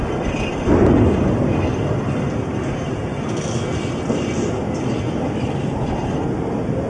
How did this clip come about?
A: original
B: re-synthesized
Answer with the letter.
A